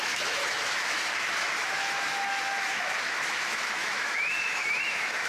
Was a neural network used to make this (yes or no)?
yes